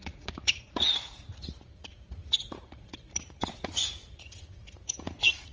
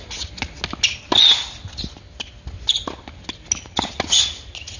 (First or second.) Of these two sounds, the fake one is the first